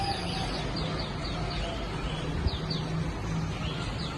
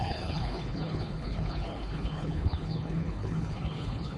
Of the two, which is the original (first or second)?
first